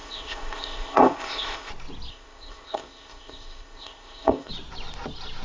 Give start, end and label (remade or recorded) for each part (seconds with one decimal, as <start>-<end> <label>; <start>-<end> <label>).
0.0-1.7 remade; 1.7-2.1 recorded; 2.1-4.5 remade; 4.5-5.4 recorded